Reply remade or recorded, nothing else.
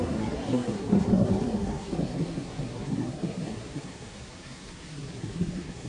remade